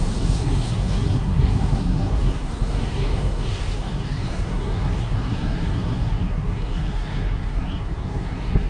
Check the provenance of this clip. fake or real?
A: fake